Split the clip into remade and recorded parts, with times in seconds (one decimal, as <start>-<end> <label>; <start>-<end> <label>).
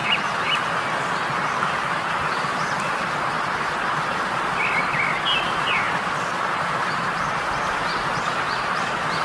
0.0-9.2 recorded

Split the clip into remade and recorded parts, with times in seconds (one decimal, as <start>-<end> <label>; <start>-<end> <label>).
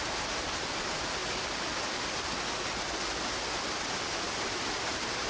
0.0-1.2 remade; 1.2-4.4 recorded; 4.4-5.3 remade